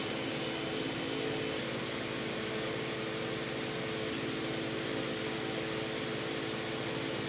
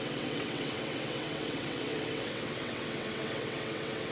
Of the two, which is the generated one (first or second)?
second